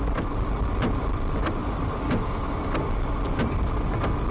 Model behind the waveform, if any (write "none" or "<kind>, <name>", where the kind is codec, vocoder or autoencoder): none